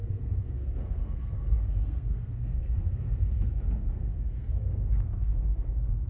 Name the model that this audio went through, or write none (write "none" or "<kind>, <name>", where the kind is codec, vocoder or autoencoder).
codec, SNAC